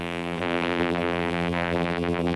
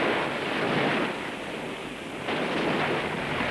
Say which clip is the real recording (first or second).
second